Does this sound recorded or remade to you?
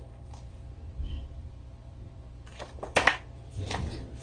remade